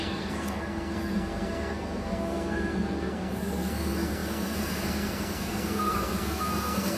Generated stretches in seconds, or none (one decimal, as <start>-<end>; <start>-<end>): 0.0-7.0